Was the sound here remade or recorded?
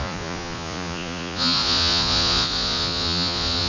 remade